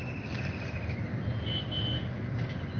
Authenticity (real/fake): real